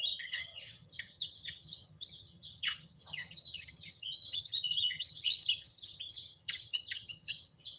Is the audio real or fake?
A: fake